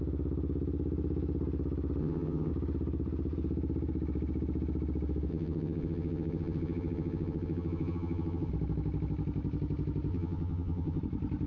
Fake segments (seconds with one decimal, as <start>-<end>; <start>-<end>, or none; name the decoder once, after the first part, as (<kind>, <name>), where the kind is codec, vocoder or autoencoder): 2.0-2.5 (vocoder, HiFi-GAN); 5.3-8.5; 10.1-11.0